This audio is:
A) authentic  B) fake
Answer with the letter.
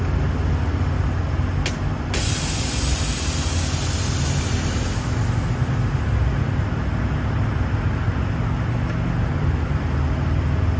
A